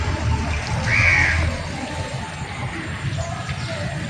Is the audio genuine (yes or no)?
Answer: yes